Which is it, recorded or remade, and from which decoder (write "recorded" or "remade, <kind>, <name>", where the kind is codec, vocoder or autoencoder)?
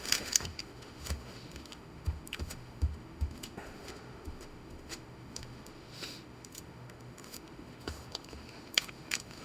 remade, autoencoder, DAC-VAE